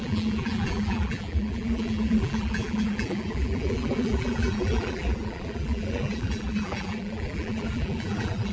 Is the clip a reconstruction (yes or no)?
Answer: yes